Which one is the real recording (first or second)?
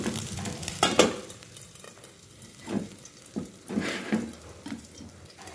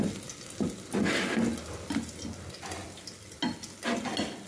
second